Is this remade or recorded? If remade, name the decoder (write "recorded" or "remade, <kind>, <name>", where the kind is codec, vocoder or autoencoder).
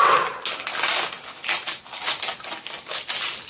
recorded